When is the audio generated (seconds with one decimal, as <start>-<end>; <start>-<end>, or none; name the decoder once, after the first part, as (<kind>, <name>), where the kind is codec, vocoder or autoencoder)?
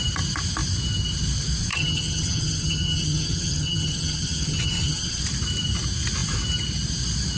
1.7-5.2 (vocoder, HiFi-GAN)